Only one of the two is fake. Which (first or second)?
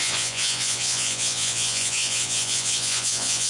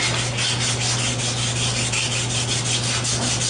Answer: first